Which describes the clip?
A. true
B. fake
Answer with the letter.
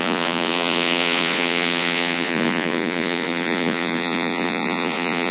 B